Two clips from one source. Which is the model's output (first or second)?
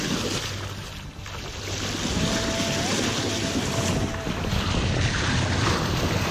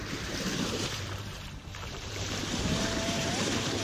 second